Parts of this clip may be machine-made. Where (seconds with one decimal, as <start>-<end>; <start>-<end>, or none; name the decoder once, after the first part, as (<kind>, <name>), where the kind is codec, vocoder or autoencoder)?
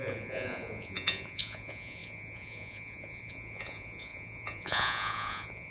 0.0-5.7 (vocoder, Vocos)